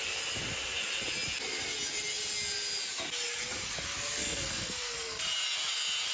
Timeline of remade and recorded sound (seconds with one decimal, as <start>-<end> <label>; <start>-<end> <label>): 0.0-4.2 recorded; 4.2-5.2 remade; 5.2-6.1 recorded